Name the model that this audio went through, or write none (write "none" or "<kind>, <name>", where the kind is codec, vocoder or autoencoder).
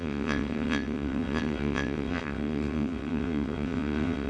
vocoder, WaveNeXt